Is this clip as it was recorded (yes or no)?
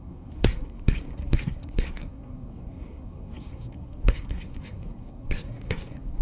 no